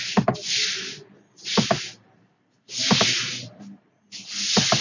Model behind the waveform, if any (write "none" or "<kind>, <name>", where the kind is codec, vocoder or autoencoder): none